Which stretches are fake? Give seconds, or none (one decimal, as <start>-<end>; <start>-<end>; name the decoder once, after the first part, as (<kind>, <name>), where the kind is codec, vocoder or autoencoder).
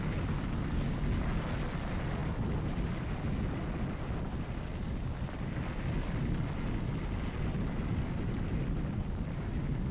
none